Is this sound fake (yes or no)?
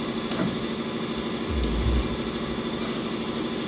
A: no